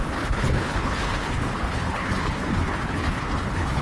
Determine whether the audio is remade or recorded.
remade